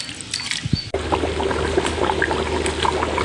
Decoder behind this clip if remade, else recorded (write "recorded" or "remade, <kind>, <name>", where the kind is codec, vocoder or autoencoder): recorded